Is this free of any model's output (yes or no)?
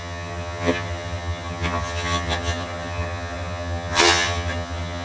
no